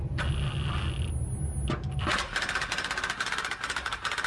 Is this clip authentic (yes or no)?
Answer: yes